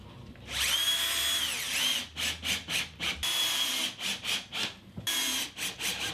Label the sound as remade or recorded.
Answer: recorded